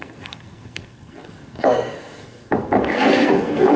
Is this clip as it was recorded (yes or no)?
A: no